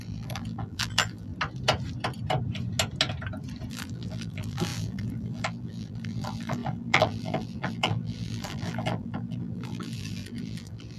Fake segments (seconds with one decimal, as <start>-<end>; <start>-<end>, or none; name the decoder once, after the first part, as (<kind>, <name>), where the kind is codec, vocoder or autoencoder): 0.0-1.3 (vocoder, BigVGAN v2); 3.7-11.0